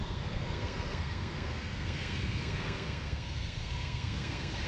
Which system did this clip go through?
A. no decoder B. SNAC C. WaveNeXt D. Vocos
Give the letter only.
B